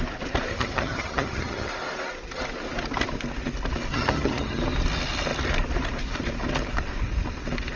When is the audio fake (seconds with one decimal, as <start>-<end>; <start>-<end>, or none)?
0.5-1.7; 3.9-4.6